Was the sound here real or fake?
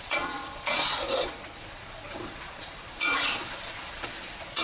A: fake